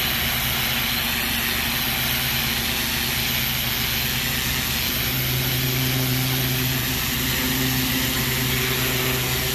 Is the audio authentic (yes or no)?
yes